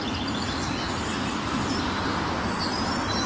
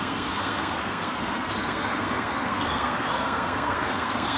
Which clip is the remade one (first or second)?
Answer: second